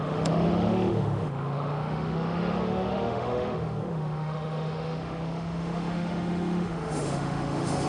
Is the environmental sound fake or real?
fake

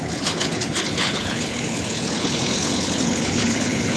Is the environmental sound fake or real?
fake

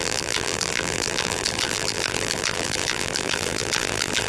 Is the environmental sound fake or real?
fake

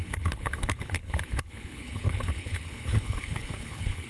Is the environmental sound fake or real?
fake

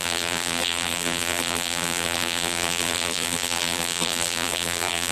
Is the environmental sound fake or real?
fake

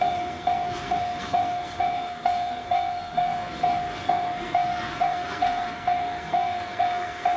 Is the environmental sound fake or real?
fake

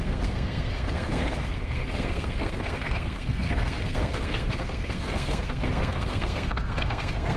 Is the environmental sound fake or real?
fake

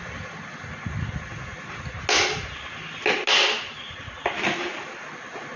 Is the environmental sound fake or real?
real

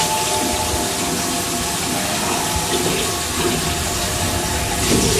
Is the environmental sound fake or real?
real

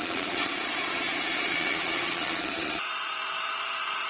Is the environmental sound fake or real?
fake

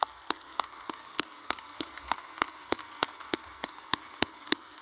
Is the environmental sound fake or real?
fake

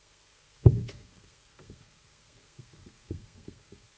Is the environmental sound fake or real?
fake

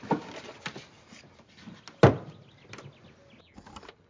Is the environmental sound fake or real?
real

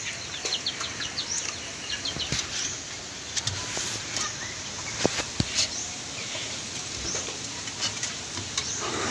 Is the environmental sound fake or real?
real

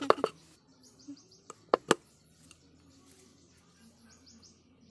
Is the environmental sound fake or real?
real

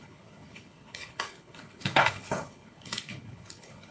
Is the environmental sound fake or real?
fake